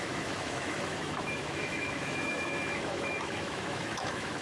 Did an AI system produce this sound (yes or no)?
yes